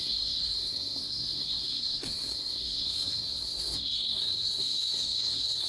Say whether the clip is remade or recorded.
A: remade